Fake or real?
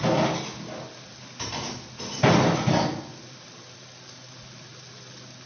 real